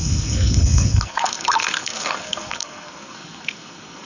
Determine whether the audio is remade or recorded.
remade